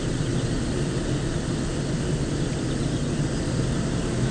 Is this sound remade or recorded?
recorded